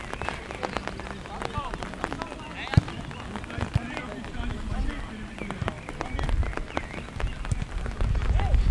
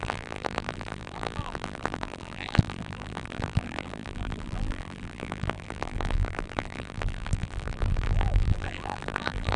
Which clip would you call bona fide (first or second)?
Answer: first